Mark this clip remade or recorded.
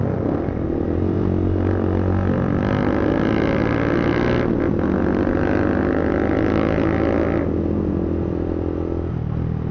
recorded